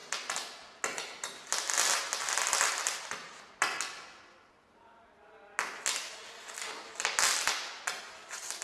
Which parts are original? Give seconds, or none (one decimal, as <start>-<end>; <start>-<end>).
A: 0.0-8.6